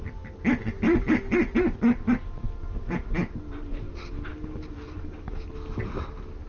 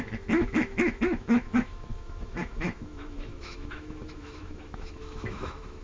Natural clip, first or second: first